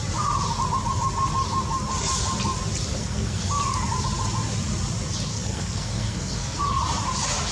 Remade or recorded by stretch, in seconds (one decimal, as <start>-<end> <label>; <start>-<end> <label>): 0.0-2.9 recorded; 2.9-3.5 remade; 3.5-5.3 recorded; 5.3-6.6 remade; 6.6-7.5 recorded

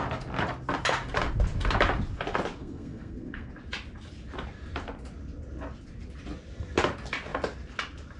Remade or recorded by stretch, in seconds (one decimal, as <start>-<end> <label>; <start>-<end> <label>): 0.0-2.6 recorded; 2.6-3.5 remade; 3.5-8.2 recorded

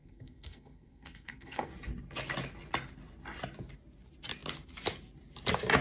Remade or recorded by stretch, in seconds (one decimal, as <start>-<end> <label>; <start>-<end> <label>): 0.0-1.7 remade; 1.7-5.8 recorded